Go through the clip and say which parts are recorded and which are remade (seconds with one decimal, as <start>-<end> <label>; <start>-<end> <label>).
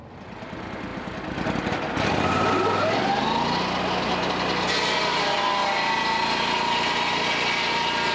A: 0.0-8.1 recorded